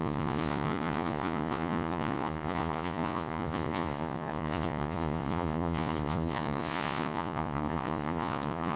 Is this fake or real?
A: fake